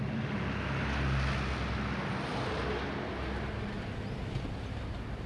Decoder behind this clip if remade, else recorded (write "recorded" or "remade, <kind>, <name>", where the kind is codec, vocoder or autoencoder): recorded